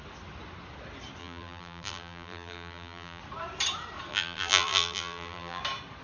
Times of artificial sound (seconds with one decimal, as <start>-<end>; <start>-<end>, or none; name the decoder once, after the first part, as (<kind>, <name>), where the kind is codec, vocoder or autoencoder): 1.2-3.2 (vocoder, BigVGAN v2); 4.1-5.6